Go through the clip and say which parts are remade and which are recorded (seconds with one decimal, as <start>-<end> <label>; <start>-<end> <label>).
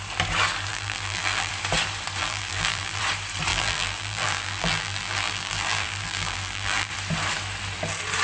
0.0-0.7 recorded; 0.7-1.5 remade; 1.5-2.2 recorded; 2.2-3.0 remade; 3.0-3.5 recorded; 3.5-6.9 remade; 6.9-8.2 recorded